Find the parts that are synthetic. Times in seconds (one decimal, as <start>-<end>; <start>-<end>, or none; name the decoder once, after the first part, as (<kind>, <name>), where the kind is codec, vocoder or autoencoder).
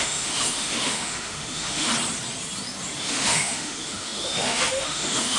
0.0-1.9 (autoencoder, DAC-VAE); 3.0-5.4